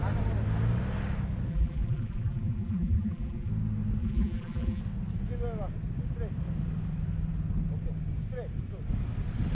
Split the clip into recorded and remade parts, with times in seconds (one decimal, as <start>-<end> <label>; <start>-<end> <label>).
0.0-1.5 recorded; 1.5-3.5 remade; 3.5-4.0 recorded; 4.0-4.8 remade; 4.8-9.5 recorded